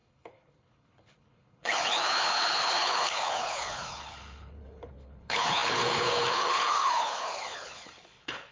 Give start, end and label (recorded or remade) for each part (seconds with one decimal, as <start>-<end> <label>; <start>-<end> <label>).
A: 0.0-8.5 remade